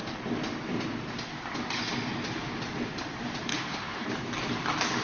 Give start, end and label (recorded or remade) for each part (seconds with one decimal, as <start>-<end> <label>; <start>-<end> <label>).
0.0-3.5 recorded; 3.5-4.1 remade; 4.1-5.0 recorded